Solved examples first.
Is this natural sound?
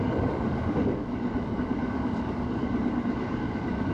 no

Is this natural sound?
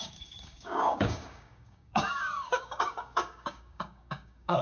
no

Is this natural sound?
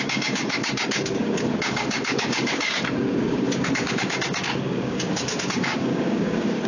no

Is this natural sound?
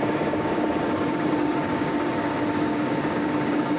no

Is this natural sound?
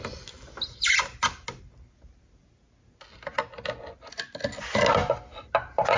yes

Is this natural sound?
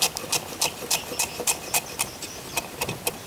yes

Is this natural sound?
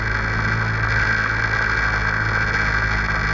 yes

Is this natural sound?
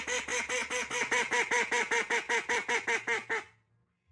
yes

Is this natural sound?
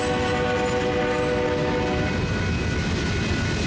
yes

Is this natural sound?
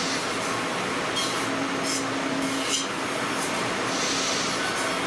yes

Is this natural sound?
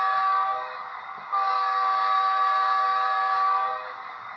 no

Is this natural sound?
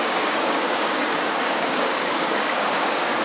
no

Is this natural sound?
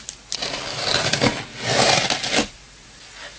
yes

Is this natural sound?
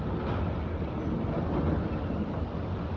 yes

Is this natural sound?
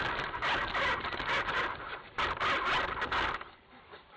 yes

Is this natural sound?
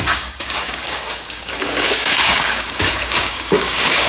no